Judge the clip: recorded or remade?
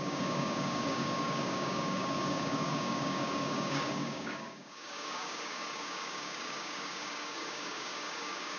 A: remade